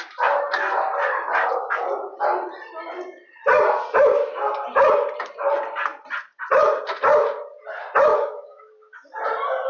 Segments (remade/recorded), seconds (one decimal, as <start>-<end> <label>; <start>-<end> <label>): 0.0-8.1 recorded; 8.1-8.7 remade; 8.7-9.7 recorded